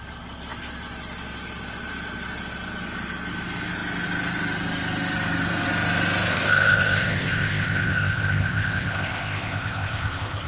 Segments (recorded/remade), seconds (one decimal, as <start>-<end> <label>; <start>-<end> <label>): 0.0-6.3 recorded; 6.3-10.5 remade